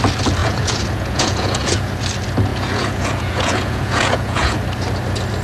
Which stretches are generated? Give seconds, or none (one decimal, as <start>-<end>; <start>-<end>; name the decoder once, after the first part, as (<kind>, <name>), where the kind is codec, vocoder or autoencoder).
0.4-1.9 (vocoder, Vocos); 2.5-4.6